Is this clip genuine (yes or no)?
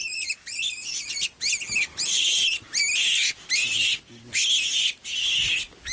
yes